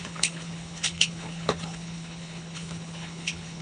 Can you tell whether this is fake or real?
fake